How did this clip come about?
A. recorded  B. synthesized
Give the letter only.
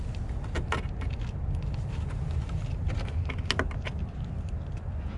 A